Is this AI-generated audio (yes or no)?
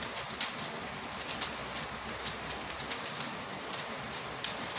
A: no